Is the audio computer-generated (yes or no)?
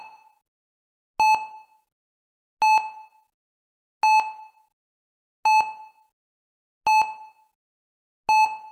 no